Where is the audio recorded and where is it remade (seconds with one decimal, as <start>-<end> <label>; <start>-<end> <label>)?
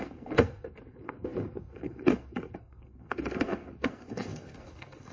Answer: 0.0-5.1 remade